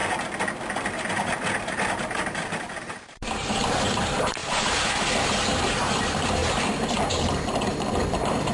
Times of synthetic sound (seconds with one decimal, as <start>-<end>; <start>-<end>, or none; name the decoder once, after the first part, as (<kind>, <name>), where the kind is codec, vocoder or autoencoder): 1.1-6.4 (vocoder, BigVGAN v2); 7.1-8.5